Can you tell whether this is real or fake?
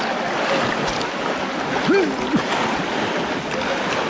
real